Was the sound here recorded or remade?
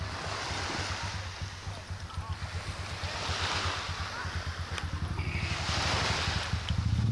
recorded